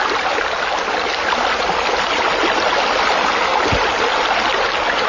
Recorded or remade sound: recorded